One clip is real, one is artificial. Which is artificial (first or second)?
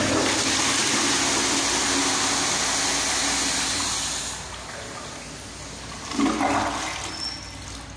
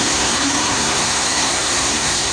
second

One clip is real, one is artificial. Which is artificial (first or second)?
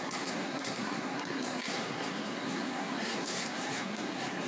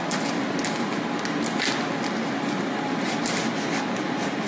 first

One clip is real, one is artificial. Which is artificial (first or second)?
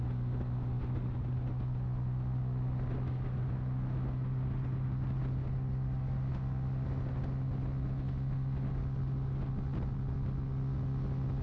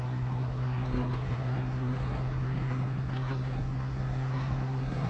second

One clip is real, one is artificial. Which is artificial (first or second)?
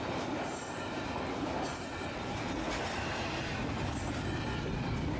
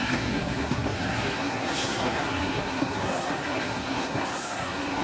second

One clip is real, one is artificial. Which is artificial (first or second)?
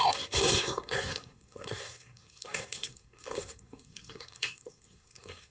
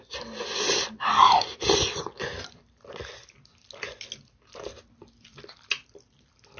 first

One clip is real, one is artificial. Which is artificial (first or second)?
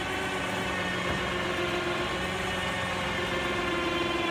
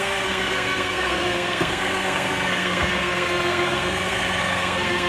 second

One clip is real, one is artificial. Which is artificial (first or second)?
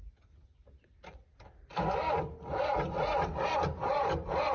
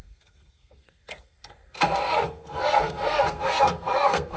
second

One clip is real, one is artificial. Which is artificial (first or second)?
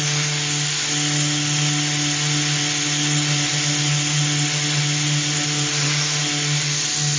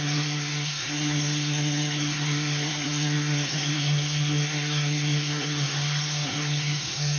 second